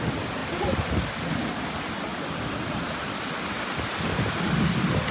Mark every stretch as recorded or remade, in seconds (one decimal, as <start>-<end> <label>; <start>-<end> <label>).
0.0-5.1 recorded